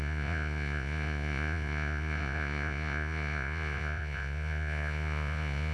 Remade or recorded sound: remade